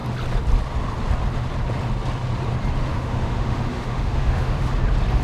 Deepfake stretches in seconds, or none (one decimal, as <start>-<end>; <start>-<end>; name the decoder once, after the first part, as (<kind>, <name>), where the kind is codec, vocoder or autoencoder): 2.9-4.7 (autoencoder, DAC-VAE)